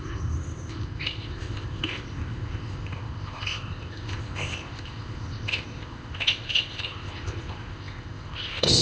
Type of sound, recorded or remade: remade